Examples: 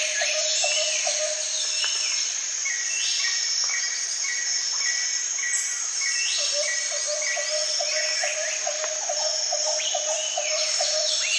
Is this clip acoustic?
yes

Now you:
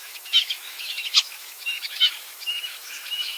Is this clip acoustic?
no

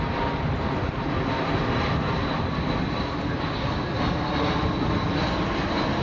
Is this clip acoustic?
yes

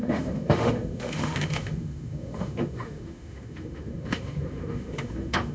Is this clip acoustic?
no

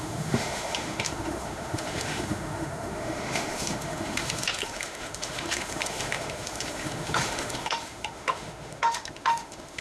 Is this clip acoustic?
no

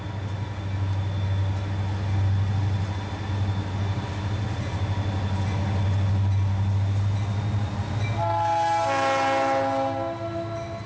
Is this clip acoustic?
yes